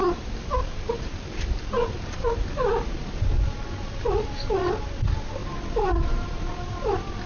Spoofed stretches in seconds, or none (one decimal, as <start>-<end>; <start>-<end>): 0.0-4.4; 5.4-6.5